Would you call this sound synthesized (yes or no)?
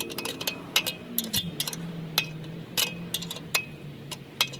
no